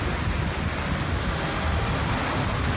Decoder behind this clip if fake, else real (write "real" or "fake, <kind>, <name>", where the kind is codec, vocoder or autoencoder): real